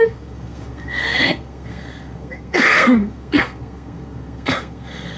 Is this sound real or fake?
fake